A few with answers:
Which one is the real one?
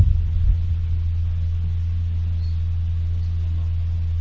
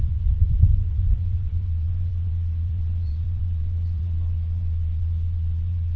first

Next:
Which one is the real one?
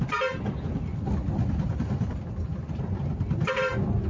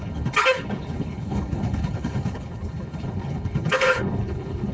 first